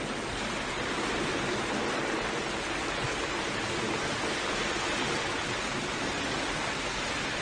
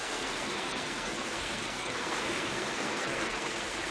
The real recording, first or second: first